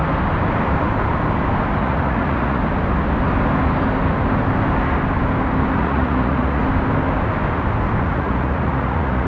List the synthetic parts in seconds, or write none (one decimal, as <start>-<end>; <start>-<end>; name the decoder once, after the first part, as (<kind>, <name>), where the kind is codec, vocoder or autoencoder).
1.8-2.6 (vocoder, Vocos); 5.7-6.6; 8.0-9.3